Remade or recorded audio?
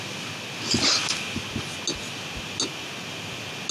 recorded